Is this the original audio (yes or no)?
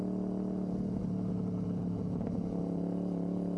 yes